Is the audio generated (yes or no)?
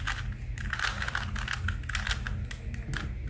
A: no